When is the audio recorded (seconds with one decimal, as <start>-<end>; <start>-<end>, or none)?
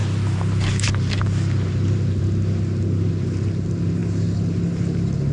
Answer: 0.0-5.3